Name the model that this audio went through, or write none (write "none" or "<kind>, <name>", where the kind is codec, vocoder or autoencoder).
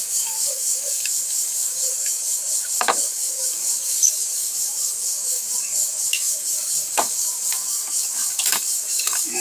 codec, DAC